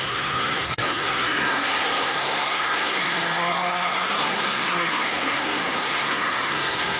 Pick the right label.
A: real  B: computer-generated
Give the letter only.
B